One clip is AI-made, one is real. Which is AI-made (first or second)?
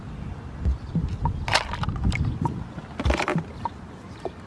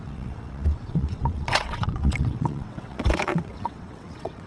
second